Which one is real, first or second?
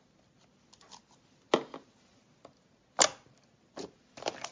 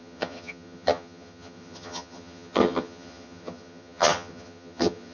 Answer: first